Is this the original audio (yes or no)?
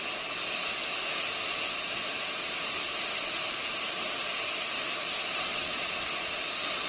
yes